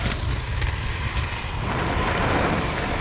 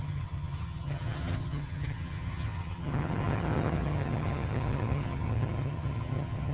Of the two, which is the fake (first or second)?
second